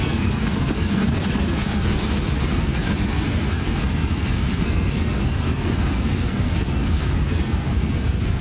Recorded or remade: remade